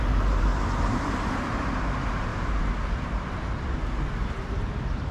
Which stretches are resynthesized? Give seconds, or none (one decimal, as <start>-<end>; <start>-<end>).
0.0-5.1